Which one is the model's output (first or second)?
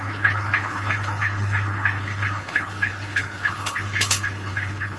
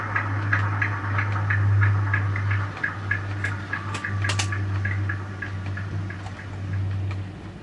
first